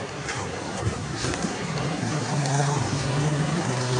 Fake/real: fake